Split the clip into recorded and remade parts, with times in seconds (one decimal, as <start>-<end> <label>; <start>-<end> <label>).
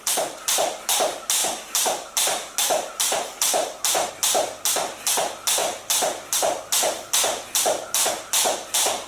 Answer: 0.0-1.4 recorded; 1.4-4.1 remade; 4.1-9.1 recorded